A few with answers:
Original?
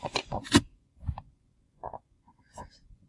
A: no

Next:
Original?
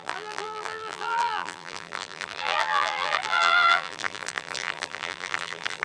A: no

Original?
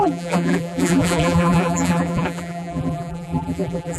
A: no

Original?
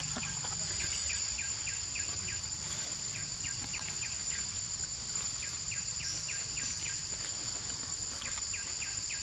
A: yes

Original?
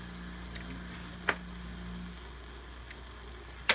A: yes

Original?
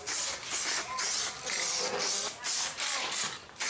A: yes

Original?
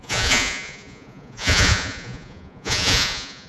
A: no